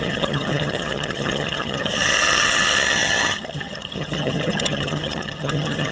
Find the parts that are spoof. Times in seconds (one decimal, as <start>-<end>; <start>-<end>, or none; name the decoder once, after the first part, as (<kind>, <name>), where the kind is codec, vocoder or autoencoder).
0.0-5.9 (vocoder, HiFi-GAN)